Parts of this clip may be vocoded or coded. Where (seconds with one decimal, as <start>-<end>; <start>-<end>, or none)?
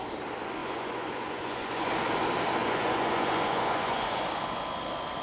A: 0.6-1.9; 2.6-4.2